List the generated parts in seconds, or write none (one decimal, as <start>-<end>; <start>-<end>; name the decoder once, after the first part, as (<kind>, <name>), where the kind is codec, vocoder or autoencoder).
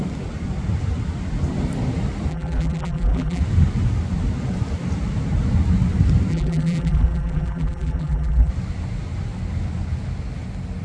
2.3-3.4 (vocoder, BigVGAN v2); 6.3-8.5